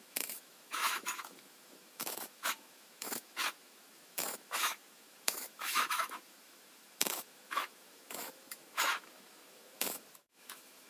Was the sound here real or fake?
fake